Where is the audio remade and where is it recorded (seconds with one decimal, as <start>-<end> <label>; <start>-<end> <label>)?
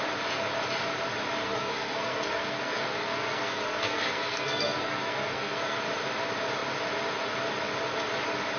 0.0-1.4 recorded; 1.4-5.8 remade; 5.8-8.6 recorded